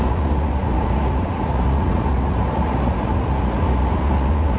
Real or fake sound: fake